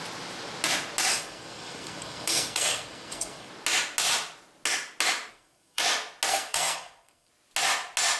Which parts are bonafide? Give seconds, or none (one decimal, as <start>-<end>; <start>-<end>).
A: 0.0-1.1; 3.5-5.3; 5.8-6.3; 7.3-8.2